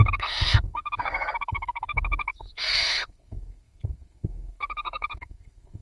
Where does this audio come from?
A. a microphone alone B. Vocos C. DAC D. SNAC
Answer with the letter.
D